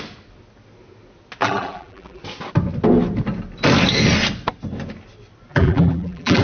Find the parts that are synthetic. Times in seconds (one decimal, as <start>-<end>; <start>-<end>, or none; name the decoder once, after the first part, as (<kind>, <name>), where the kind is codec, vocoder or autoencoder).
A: 1.4-2.2 (vocoder, BigVGAN v2); 5.5-6.4

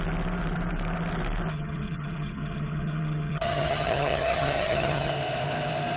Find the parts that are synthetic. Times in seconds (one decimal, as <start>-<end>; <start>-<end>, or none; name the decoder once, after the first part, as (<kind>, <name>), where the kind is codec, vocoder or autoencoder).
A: 1.5-5.1 (vocoder, HiFi-GAN)

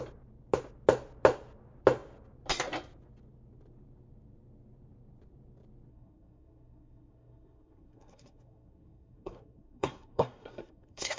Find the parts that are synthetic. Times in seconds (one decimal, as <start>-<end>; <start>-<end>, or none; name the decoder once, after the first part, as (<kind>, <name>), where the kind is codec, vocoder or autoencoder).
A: 5.9-11.2 (codec, SNAC)

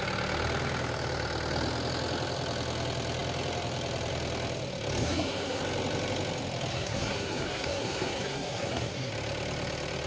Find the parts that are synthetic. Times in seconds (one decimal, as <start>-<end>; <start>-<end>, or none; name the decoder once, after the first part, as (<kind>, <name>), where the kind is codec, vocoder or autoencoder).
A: 5.0-5.6 (codec, SNAC); 6.7-9.1

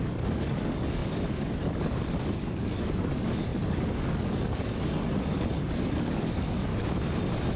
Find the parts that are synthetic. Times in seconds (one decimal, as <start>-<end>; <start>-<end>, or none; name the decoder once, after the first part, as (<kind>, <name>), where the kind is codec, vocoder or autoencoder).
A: 0.0-6.7 (codec, DAC)